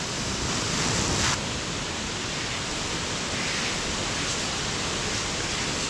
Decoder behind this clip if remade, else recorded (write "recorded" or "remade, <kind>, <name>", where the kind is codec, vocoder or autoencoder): recorded